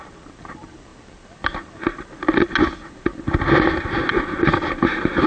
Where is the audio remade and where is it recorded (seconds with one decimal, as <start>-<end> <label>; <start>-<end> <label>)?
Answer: 0.0-5.3 recorded